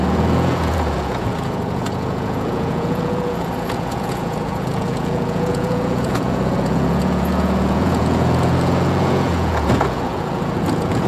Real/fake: fake